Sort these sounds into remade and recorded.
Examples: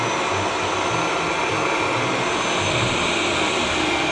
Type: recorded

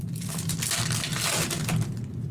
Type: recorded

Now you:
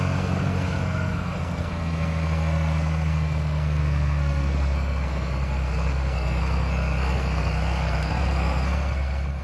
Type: remade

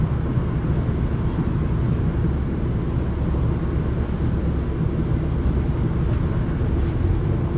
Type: recorded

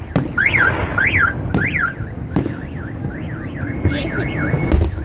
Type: recorded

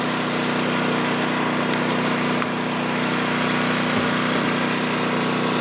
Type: recorded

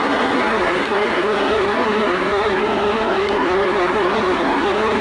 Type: remade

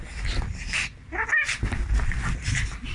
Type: recorded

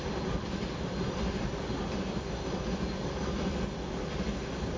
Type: recorded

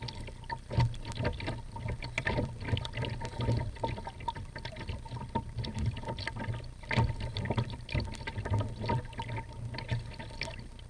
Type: recorded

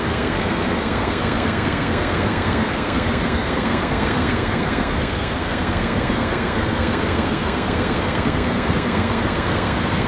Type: remade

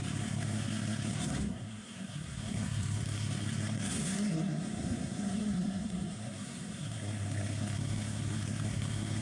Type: remade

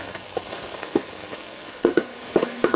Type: remade